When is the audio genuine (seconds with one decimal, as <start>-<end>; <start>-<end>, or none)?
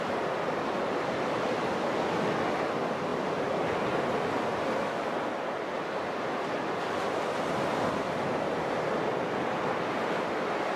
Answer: 0.0-10.8